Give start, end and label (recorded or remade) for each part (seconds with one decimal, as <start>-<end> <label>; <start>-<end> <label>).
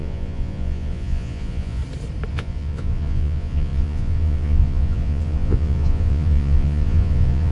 0.0-1.8 remade; 1.8-2.3 recorded; 2.3-7.5 remade